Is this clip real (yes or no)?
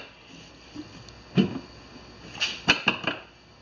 yes